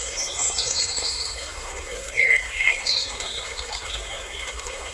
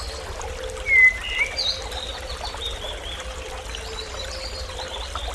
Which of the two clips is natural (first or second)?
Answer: second